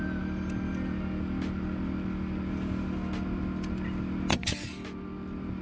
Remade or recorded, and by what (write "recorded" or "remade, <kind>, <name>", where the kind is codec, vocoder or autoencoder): recorded